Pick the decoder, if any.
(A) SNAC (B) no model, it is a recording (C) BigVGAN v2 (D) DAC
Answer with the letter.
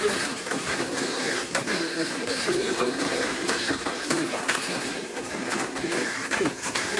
A